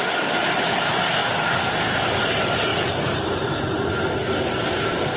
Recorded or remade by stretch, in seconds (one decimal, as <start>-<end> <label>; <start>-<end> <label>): 0.0-5.2 recorded

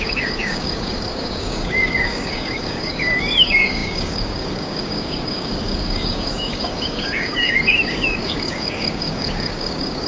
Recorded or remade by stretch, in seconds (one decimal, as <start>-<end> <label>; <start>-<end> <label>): 0.0-10.1 remade